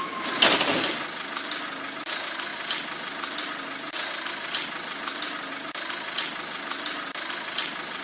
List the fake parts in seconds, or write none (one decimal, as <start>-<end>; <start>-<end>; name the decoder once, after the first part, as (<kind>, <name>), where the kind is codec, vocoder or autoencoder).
none